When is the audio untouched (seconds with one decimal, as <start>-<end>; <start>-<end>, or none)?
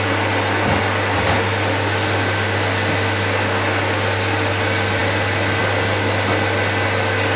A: 0.0-7.4